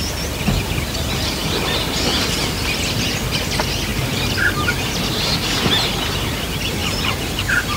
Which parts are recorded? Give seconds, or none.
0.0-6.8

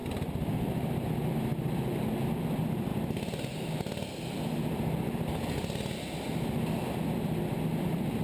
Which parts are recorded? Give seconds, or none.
0.0-8.2

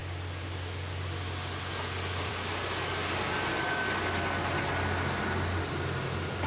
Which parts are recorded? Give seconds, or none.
0.0-6.5

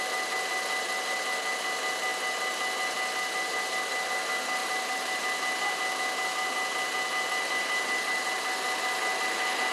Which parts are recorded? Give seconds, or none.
0.0-4.6; 5.2-9.7